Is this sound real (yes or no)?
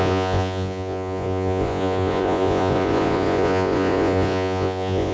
no